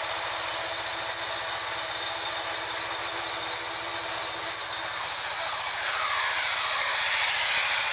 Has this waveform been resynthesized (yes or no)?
no